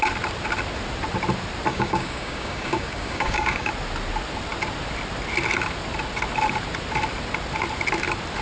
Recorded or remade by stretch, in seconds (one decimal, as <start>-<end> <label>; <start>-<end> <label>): 0.0-1.7 recorded; 1.7-3.7 remade; 3.7-8.4 recorded